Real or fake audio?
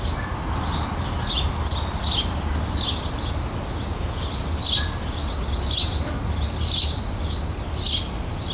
real